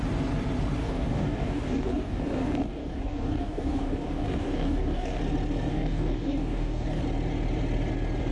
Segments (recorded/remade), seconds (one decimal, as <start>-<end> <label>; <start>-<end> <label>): 0.0-0.8 recorded; 0.8-5.2 remade; 5.2-5.7 recorded; 5.7-7.0 remade; 7.0-8.3 recorded